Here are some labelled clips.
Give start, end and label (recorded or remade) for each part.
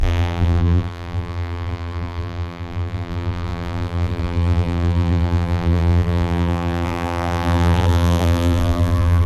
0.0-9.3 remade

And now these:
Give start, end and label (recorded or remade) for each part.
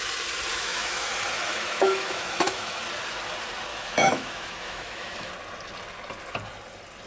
0.0-0.5 recorded; 0.5-1.1 remade; 1.1-1.5 recorded; 1.5-2.8 remade; 2.8-3.7 recorded; 3.7-5.3 remade; 5.3-7.1 recorded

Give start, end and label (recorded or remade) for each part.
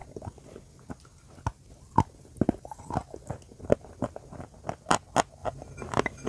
0.0-6.3 recorded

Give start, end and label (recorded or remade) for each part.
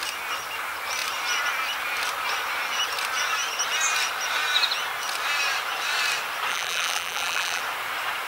0.0-6.5 recorded; 6.5-7.6 remade; 7.6-8.3 recorded